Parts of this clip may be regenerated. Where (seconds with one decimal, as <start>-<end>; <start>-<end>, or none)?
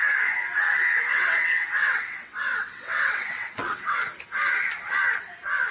1.1-4.0